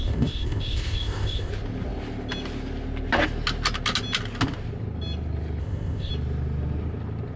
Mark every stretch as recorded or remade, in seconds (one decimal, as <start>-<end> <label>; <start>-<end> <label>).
0.0-1.5 remade; 1.5-5.6 recorded; 5.6-6.1 remade; 6.1-7.4 recorded